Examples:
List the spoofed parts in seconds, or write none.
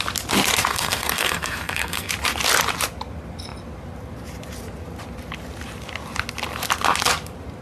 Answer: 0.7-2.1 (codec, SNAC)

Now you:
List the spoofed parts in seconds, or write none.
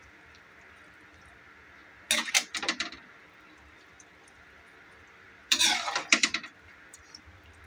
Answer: 0.0-1.8 (vocoder, BigVGAN v2); 2.3-7.7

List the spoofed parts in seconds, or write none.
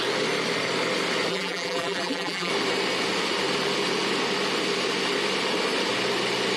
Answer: 1.3-2.5 (vocoder, BigVGAN v2)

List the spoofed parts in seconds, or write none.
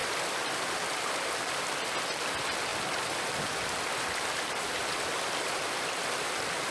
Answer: 0.0-0.9 (vocoder, BigVGAN v2); 2.7-6.7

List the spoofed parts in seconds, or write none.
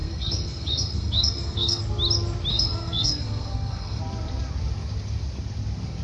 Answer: 0.0-1.8 (codec, SNAC); 2.5-4.0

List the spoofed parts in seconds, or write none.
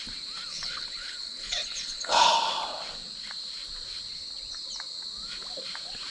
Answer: 0.5-2.3 (codec, HILCodec)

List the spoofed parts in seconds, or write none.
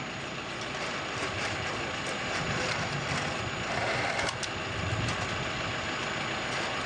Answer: none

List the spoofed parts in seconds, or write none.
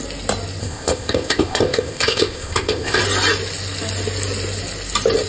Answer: 0.6-3.0 (codec, ZipCodec)